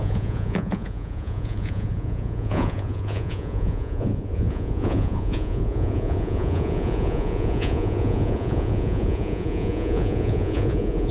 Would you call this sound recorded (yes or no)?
no